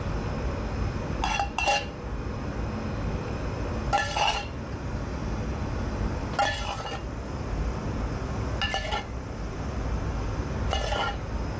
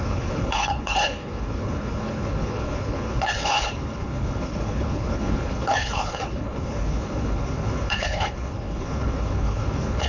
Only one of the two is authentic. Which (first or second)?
first